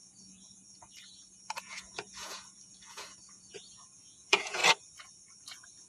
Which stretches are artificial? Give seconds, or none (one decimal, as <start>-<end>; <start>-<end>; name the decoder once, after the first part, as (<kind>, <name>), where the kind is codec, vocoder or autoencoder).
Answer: 0.0-4.6 (vocoder, Vocos); 5.3-5.9